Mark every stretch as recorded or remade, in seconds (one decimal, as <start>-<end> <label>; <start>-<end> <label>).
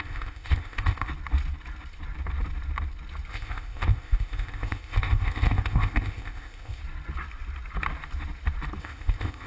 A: 0.0-1.1 remade; 1.1-3.3 recorded; 3.3-6.8 remade; 6.8-8.8 recorded; 8.8-9.5 remade